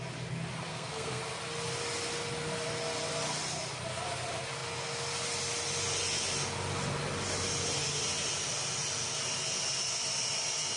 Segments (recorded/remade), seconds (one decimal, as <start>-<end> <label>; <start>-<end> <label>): 0.0-0.7 recorded; 0.7-1.2 remade; 1.2-10.8 recorded